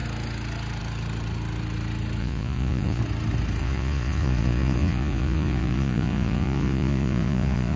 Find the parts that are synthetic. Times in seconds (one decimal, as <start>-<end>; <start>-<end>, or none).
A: 2.2-3.0; 3.6-7.8

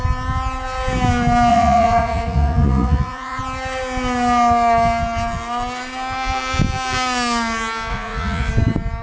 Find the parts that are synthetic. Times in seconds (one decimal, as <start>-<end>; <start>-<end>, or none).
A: 1.5-3.4; 7.9-8.5

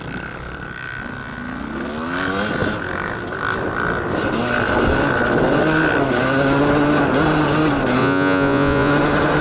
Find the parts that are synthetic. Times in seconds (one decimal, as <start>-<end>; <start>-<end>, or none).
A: 8.0-8.9

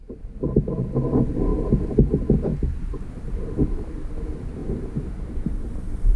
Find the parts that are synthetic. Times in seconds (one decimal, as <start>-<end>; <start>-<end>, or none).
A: none